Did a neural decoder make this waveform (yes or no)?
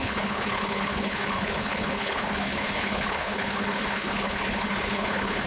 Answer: yes